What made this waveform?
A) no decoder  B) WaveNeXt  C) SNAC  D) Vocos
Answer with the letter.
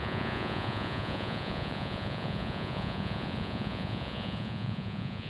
D